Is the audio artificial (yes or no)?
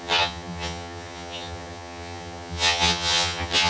yes